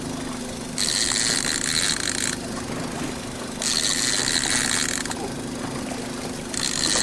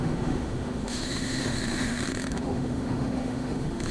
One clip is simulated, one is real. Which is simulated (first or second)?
second